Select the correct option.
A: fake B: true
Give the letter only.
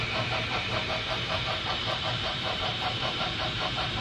A